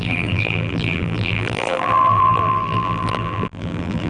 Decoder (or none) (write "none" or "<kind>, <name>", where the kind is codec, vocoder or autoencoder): vocoder, BigVGAN v2